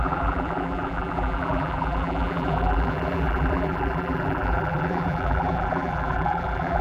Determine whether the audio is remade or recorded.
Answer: remade